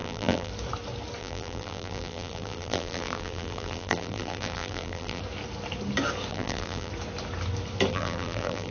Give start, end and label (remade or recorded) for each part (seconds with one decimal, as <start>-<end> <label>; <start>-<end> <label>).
0.0-0.5 remade; 0.5-1.2 recorded; 1.2-5.2 remade; 5.2-6.3 recorded; 6.3-6.9 remade; 6.9-7.9 recorded; 7.9-8.7 remade